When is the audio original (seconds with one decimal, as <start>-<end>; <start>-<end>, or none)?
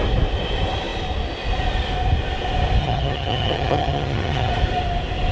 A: 0.0-2.8; 4.5-5.3